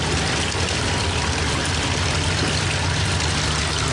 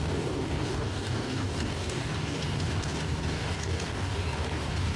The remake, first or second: second